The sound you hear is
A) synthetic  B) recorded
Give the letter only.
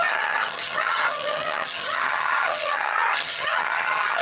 A